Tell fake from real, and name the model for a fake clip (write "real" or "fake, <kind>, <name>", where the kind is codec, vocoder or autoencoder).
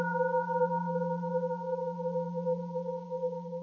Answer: fake, vocoder, Vocos